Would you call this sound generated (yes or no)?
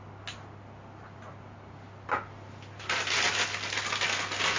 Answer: no